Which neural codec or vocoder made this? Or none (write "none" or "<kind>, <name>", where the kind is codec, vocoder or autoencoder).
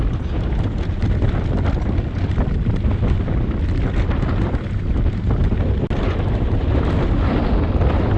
none